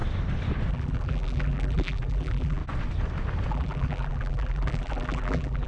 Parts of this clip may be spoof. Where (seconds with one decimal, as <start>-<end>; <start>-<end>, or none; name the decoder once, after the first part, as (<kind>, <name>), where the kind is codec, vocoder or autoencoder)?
0.7-2.6 (vocoder, BigVGAN v2); 3.5-5.7